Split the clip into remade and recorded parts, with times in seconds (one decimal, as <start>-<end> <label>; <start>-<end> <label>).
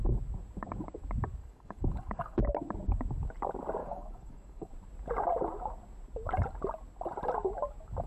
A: 0.0-1.4 recorded; 1.4-2.5 remade; 2.5-3.8 recorded; 3.8-4.7 remade; 4.7-8.1 recorded